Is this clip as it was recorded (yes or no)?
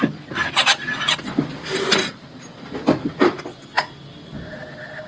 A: yes